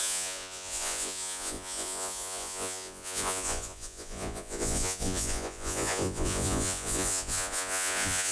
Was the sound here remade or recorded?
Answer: remade